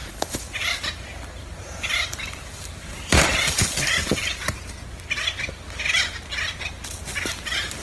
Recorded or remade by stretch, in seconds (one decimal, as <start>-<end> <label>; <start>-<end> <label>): 0.0-4.7 remade; 4.7-7.8 recorded